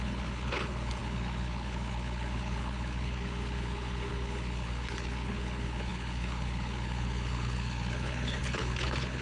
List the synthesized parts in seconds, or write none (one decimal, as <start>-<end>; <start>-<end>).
0.0-9.2